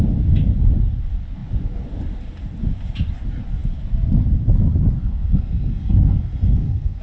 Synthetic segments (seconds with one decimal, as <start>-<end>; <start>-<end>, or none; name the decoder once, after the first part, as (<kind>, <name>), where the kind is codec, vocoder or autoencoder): 5.0-7.0 (codec, SNAC)